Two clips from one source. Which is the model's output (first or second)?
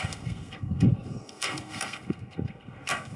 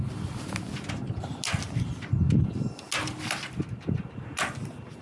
first